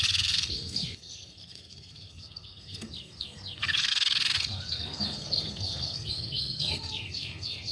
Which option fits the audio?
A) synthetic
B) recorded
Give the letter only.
A